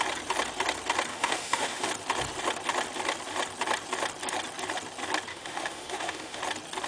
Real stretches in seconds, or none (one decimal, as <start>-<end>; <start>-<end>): 0.0-1.1; 1.9-5.3; 6.4-6.9